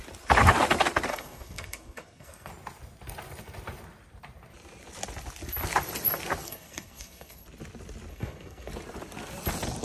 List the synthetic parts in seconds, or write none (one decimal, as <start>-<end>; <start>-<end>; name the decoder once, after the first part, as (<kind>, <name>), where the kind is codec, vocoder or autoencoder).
1.1-2.5 (codec, SNAC); 6.4-7.4; 8.1-8.7